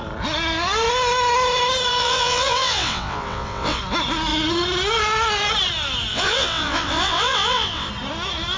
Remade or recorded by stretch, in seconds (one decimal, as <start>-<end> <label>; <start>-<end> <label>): 0.0-2.0 recorded; 2.0-3.8 remade; 3.8-6.1 recorded; 6.1-7.9 remade; 7.9-8.6 recorded